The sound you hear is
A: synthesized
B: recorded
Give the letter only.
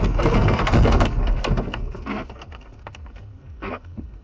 A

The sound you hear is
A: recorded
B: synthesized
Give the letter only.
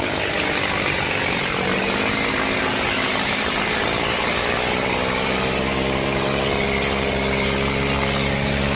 B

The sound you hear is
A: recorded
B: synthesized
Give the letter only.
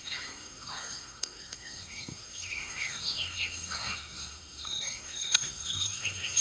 B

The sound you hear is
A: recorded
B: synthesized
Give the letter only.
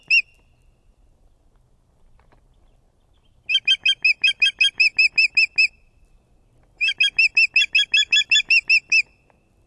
A